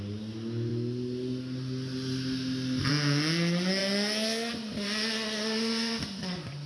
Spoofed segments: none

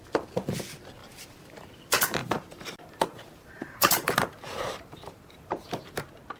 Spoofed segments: 1.0-1.7 (vocoder, BigVGAN v2); 2.2-6.0